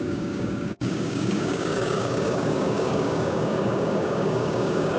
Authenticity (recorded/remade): remade